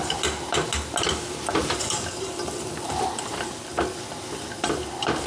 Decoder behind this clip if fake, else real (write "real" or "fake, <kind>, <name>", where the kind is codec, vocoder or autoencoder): real